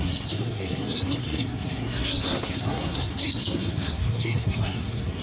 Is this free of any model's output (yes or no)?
no